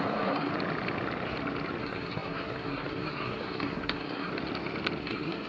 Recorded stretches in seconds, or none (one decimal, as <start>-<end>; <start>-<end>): 0.5-1.8; 4.3-5.0